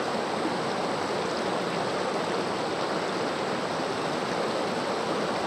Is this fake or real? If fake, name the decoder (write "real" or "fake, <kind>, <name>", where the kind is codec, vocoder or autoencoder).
real